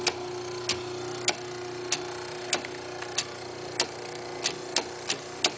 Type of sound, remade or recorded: recorded